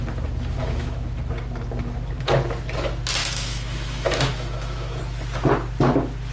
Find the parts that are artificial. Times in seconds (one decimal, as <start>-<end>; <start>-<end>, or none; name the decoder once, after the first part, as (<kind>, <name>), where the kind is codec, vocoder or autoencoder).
0.6-1.2 (autoencoder, DAC-VAE); 3.2-5.0